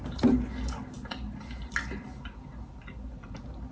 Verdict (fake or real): real